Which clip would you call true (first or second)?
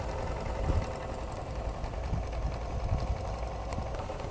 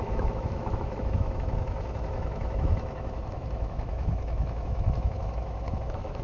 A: first